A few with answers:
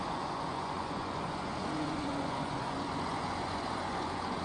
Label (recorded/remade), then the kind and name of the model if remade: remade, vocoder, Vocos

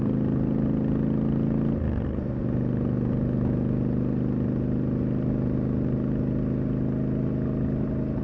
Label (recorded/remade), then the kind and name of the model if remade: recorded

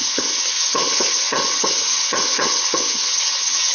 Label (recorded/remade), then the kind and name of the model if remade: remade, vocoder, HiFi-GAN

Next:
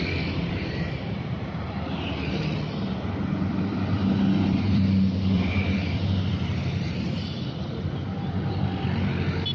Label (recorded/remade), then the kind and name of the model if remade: remade, vocoder, BigVGAN v2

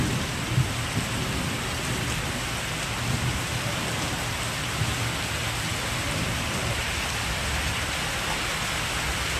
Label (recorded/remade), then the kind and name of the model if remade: recorded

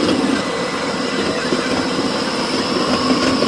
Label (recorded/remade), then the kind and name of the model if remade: recorded